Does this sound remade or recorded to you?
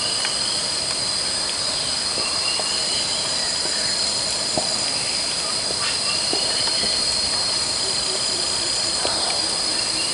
remade